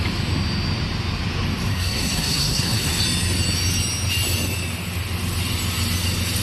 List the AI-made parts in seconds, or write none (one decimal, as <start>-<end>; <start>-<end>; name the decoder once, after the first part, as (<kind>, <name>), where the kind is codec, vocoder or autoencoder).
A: 1.7-3.0 (codec, SNAC)